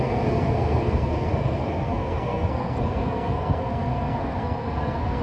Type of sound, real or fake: fake